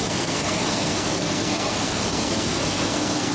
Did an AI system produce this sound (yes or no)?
yes